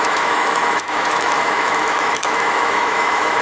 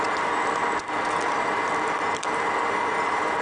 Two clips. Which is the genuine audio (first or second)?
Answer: second